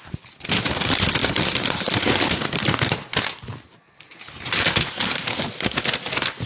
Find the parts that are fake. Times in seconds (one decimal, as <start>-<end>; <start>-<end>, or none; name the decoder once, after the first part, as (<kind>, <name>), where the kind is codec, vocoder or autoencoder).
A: none